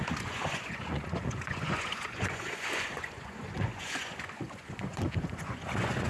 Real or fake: fake